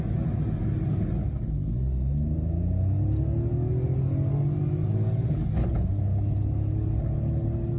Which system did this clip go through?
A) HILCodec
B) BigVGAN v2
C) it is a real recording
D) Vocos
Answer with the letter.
C